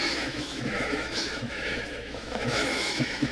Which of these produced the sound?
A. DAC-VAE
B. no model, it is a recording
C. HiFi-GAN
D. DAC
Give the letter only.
A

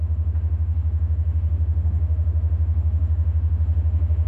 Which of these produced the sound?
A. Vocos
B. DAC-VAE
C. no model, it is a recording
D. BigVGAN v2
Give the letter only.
B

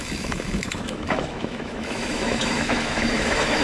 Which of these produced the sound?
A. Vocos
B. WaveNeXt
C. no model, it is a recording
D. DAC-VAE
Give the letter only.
D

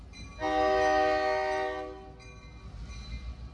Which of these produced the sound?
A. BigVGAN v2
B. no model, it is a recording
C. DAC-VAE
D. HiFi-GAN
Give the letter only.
B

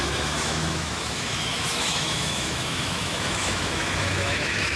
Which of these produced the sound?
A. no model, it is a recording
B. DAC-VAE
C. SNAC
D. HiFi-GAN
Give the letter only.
B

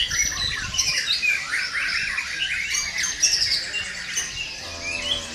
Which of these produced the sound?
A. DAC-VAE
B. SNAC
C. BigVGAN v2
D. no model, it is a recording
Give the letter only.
D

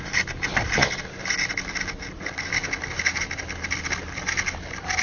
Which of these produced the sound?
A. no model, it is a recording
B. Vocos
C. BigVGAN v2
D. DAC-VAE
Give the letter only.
A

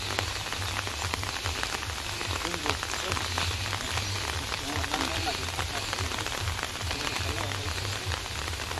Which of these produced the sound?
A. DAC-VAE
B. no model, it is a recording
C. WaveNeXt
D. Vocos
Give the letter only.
B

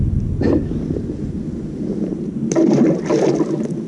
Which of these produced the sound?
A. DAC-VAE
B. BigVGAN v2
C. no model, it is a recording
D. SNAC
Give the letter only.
C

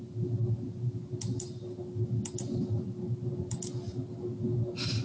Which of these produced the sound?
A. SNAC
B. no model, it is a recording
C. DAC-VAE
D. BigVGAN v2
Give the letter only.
B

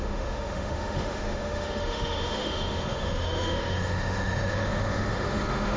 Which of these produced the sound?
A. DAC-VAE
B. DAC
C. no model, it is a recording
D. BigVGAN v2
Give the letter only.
A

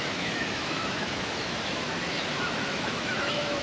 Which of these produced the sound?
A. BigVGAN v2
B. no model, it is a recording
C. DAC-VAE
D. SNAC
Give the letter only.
C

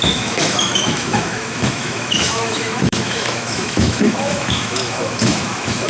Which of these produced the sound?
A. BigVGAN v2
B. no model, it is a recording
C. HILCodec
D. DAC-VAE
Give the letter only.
D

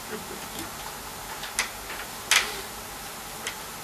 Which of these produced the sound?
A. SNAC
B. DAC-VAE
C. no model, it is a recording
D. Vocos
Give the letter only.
C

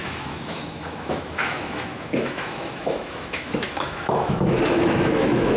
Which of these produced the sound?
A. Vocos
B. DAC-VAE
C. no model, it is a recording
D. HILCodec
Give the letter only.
B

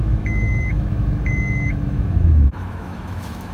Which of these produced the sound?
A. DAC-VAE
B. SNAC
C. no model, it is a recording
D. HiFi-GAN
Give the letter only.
A